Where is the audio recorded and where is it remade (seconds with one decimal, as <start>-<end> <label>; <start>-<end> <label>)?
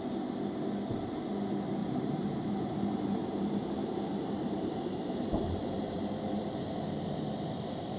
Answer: 0.0-1.8 recorded; 1.8-6.1 remade; 6.1-8.0 recorded